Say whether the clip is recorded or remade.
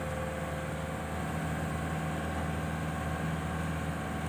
recorded